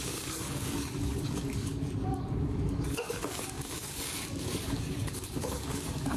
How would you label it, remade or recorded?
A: remade